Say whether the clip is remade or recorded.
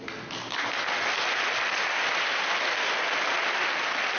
recorded